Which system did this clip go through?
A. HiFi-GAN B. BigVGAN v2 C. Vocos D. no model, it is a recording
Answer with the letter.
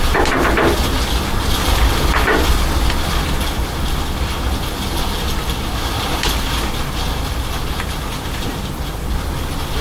D